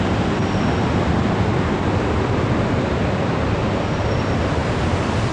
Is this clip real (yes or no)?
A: yes